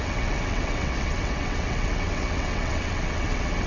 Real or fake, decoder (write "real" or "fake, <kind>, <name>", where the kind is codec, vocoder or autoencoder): fake, vocoder, WaveNeXt